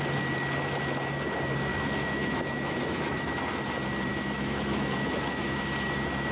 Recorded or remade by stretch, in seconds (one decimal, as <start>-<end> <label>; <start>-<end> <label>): 0.0-1.7 recorded; 1.7-3.3 remade; 3.3-4.1 recorded; 4.1-5.6 remade; 5.6-6.3 recorded